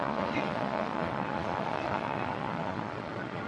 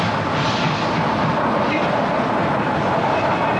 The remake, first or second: first